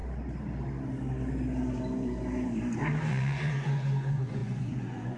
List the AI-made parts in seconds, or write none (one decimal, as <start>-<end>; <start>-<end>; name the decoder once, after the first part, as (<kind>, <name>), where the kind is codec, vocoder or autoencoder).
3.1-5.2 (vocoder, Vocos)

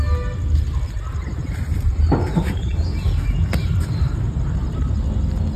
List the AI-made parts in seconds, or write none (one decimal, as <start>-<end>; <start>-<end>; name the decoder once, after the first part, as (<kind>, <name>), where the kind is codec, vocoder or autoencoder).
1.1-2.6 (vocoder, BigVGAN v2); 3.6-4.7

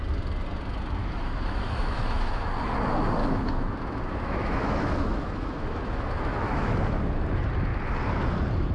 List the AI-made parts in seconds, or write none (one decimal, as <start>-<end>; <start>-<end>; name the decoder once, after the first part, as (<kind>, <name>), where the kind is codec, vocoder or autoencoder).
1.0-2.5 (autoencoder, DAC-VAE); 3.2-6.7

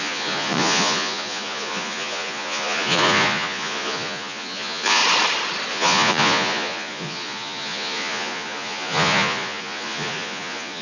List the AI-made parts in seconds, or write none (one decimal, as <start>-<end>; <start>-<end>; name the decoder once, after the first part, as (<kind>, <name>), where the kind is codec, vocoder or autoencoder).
0.0-5.0 (vocoder, Vocos); 5.7-10.8